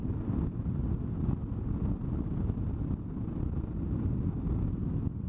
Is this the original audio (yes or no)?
yes